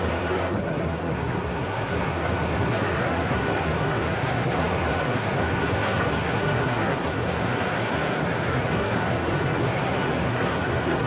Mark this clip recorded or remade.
remade